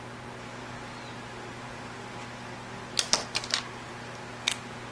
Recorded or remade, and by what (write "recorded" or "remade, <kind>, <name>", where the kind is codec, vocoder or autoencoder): recorded